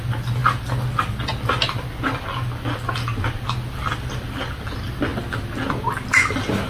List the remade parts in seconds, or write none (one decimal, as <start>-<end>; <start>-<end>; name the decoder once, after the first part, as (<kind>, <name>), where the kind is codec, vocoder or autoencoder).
none

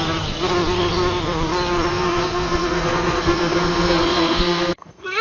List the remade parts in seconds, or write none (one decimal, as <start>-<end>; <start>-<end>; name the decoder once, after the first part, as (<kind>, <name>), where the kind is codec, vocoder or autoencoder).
1.9-5.2 (codec, SNAC)

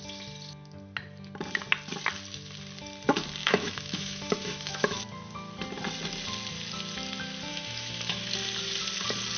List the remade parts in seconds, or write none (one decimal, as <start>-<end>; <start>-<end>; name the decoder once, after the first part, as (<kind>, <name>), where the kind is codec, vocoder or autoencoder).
3.4-5.0 (autoencoder, DAC-VAE); 7.5-8.2

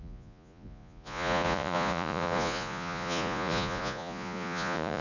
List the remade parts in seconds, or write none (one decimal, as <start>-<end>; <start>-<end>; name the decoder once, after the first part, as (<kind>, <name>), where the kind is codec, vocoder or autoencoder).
0.0-5.0 (vocoder, Vocos)